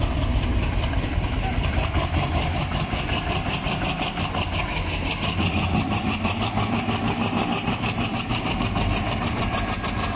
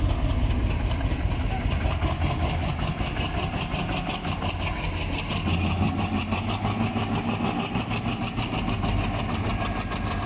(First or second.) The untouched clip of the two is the second